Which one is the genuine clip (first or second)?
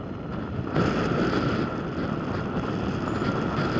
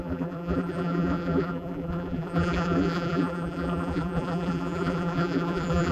first